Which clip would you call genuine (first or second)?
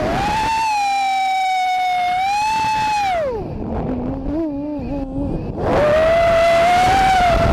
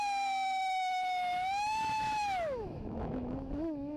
first